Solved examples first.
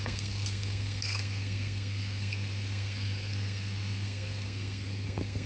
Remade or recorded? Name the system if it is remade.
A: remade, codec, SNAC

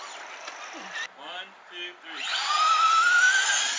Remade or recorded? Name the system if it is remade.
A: recorded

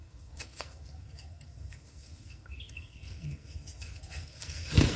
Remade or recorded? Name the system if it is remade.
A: remade, codec, SNAC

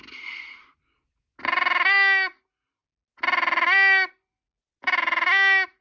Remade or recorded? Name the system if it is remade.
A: recorded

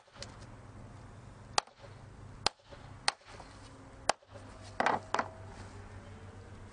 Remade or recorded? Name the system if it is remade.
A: recorded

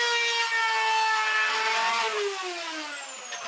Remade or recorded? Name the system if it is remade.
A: recorded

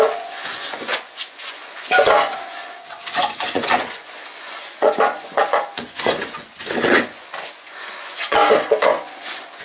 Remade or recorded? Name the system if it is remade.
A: remade, vocoder, Vocos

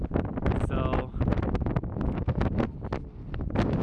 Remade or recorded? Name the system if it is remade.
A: recorded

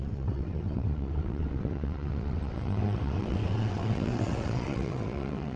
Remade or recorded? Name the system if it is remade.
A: remade, vocoder, WaveNeXt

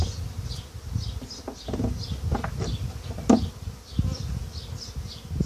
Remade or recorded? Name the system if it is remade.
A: recorded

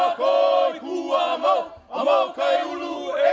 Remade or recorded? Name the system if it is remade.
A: recorded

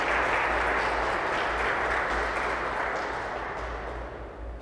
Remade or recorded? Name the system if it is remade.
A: recorded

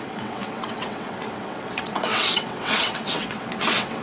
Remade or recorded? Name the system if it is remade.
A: remade, vocoder, WaveNeXt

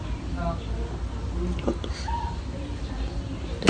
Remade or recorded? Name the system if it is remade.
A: recorded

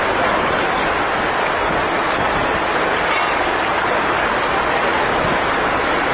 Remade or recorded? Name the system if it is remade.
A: recorded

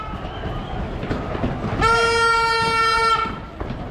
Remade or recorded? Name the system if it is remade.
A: recorded